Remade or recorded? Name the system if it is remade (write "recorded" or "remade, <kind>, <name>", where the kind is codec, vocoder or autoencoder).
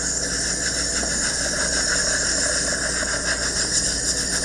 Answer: recorded